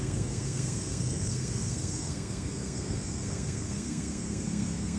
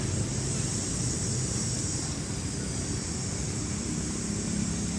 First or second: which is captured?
second